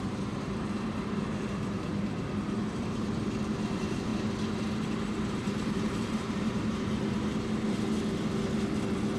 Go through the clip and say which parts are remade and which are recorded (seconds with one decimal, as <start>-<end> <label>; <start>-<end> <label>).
0.0-4.1 remade; 4.1-5.0 recorded; 5.0-7.3 remade; 7.3-9.2 recorded